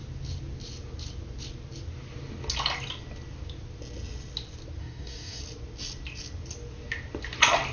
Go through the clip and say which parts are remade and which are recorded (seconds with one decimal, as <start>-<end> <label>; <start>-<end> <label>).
0.0-4.8 recorded; 4.8-5.4 remade; 5.4-7.7 recorded